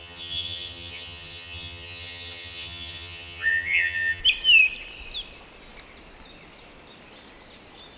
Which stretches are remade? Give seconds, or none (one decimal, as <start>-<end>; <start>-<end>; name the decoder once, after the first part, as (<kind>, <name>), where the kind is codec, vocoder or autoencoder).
0.0-4.2 (vocoder, HiFi-GAN)